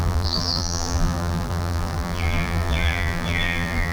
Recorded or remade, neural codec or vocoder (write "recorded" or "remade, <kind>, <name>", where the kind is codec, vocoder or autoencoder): remade, vocoder, BigVGAN v2